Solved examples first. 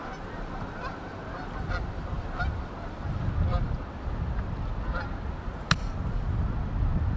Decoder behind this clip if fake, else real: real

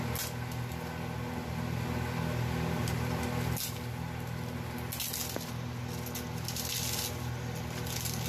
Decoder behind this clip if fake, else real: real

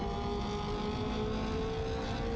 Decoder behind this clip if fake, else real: real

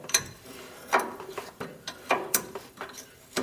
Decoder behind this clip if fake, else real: fake, vocoder, BigVGAN v2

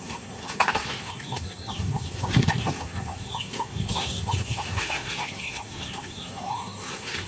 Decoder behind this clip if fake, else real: fake, codec, SNAC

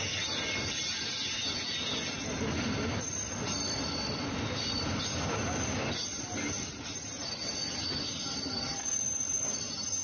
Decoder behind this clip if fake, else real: real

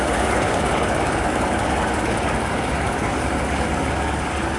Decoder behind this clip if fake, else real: fake, codec, DAC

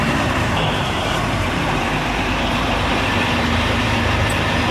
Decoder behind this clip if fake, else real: fake, vocoder, BigVGAN v2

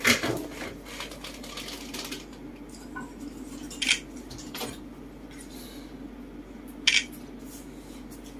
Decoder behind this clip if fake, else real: real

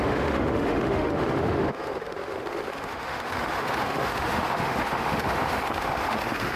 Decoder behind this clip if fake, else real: fake, autoencoder, DAC-VAE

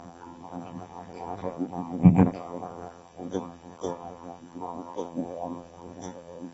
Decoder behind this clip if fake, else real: fake, vocoder, BigVGAN v2